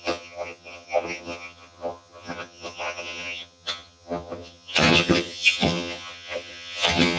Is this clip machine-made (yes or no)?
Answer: yes